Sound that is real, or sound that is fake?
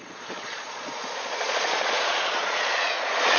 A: fake